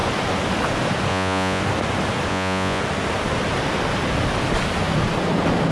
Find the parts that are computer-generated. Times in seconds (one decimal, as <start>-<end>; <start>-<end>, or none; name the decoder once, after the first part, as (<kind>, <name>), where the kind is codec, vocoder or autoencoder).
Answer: 1.1-1.6 (vocoder, Vocos); 2.3-2.8